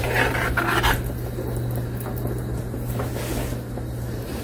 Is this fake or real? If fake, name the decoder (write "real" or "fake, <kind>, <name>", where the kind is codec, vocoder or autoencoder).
real